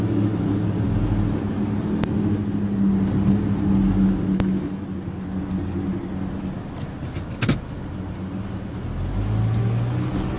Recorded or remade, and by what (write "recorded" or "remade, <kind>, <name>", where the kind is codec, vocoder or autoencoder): recorded